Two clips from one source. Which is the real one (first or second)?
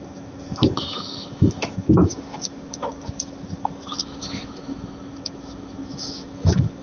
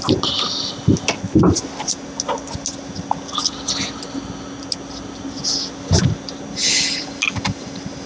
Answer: second